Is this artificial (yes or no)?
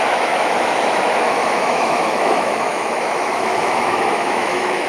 yes